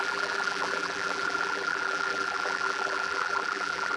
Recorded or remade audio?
remade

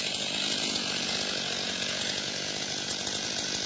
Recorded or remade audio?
remade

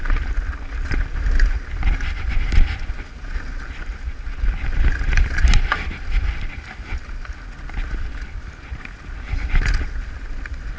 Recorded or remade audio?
recorded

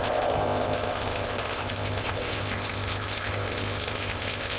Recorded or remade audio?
remade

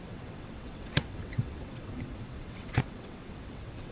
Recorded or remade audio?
remade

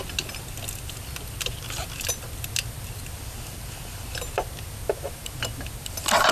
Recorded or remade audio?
recorded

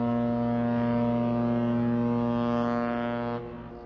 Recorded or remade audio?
recorded